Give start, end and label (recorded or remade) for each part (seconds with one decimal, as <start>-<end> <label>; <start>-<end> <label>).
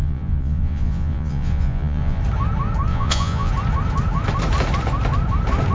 0.0-2.2 remade; 2.2-2.9 recorded; 2.9-3.5 remade; 3.5-5.7 recorded